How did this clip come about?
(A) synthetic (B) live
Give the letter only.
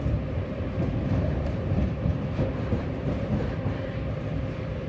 A